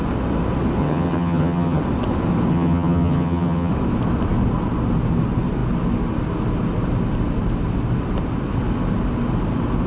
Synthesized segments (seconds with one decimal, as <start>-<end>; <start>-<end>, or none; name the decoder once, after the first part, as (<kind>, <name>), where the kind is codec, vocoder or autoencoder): 0.8-1.8 (vocoder, HiFi-GAN); 2.5-3.7